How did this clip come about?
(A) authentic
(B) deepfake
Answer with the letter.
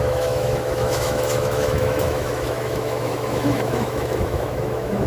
B